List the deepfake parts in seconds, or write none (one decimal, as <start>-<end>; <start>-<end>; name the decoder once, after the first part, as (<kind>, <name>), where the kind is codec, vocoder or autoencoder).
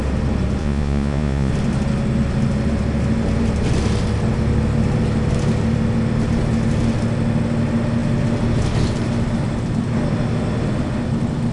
0.6-1.5 (vocoder, Vocos)